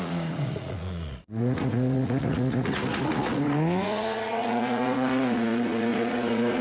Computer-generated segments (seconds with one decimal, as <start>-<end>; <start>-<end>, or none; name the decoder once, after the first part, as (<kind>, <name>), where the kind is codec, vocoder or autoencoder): 0.0-6.6 (vocoder, Vocos)